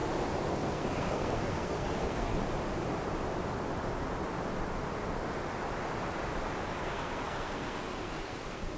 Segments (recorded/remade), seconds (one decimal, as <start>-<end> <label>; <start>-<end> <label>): 0.0-0.5 recorded; 0.5-2.3 remade; 2.3-6.8 recorded; 6.8-8.8 remade